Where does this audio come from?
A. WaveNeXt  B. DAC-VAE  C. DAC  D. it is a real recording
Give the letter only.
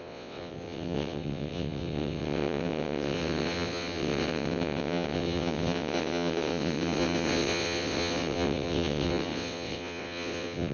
A